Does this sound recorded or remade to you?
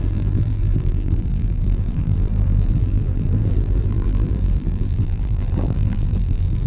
remade